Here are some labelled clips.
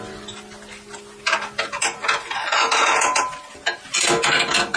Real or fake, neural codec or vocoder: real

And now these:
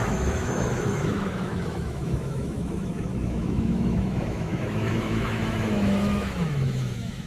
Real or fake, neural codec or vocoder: fake, autoencoder, DAC-VAE